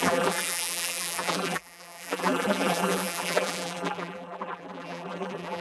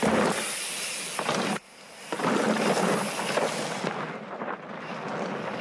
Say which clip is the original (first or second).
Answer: second